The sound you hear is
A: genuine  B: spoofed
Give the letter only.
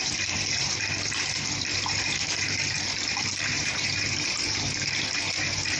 B